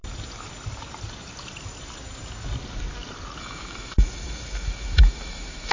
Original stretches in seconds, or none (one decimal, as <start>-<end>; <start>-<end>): 0.0-3.4